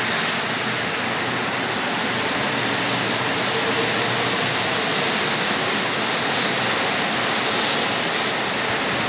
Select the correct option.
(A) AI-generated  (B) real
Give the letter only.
B